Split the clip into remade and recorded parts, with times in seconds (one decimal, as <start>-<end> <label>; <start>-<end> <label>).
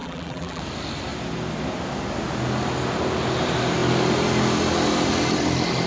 0.0-0.6 remade; 0.6-5.9 recorded